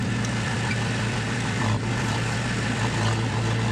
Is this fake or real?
fake